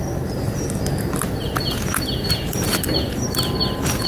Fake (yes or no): no